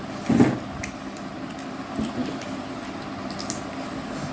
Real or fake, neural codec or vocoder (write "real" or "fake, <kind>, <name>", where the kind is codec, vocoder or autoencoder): real